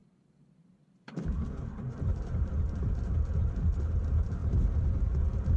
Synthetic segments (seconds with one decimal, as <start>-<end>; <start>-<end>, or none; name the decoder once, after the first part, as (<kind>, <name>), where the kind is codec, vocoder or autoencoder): 0.0-2.4 (vocoder, BigVGAN v2)